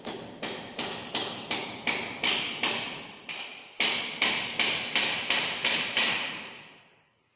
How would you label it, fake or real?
fake